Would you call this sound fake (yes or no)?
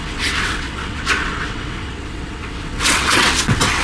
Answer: yes